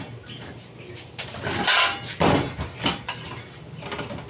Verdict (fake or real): real